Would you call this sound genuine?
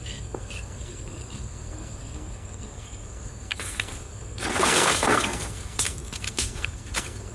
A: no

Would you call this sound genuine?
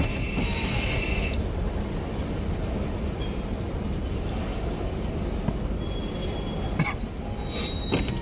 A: yes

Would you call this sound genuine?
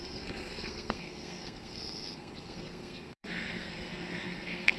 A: no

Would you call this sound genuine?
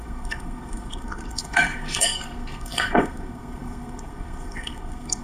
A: no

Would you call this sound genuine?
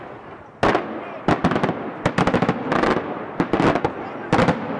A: yes